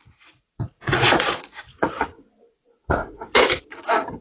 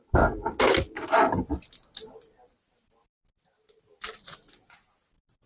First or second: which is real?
second